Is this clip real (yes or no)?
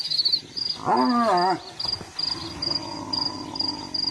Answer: yes